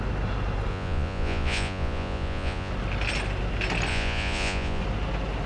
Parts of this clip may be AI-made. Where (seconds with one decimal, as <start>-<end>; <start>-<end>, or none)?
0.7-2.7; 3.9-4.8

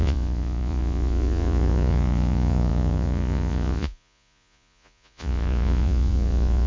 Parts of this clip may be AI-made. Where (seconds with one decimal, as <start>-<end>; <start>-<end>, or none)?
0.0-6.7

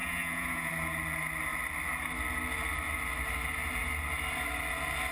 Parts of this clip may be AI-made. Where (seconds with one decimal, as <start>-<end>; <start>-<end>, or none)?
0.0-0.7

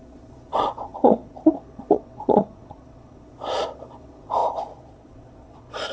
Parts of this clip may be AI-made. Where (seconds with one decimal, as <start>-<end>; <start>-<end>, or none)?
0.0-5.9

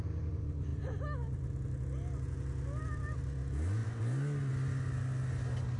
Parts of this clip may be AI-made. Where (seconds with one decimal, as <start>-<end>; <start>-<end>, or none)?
none

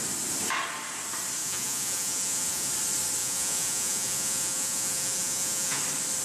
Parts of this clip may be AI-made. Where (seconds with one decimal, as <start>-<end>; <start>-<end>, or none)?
1.4-2.7; 3.2-5.8

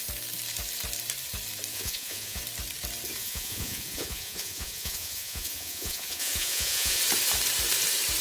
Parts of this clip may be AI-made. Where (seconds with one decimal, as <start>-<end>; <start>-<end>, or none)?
1.7-2.4; 3.2-7.0

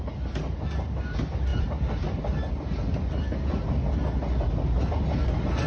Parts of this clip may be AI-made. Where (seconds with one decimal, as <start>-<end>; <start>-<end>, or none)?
none